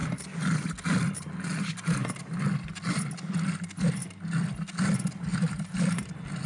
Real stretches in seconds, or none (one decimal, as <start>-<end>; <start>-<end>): 0.0-5.3; 6.1-6.5